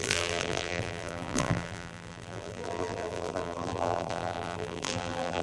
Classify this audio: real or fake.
fake